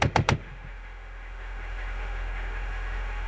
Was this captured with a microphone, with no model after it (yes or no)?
no